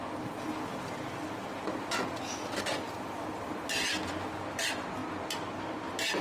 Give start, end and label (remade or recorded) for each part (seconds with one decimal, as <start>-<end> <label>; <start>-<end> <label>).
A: 0.0-6.2 recorded